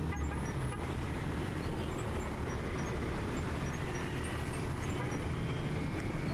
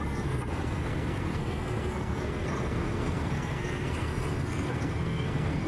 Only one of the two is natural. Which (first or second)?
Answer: first